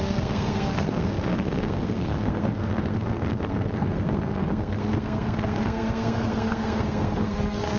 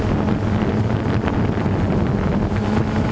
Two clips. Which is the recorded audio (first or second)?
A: second